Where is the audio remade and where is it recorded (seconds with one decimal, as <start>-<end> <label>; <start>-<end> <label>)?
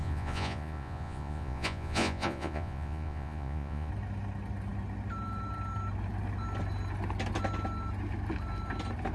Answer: 0.0-3.9 remade; 3.9-9.1 recorded